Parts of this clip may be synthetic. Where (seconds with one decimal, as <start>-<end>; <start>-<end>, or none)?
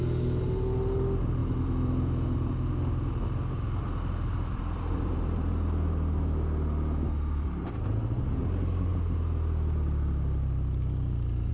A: none